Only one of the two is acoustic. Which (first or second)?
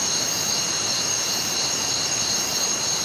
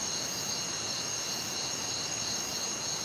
second